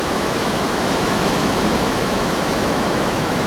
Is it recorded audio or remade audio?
remade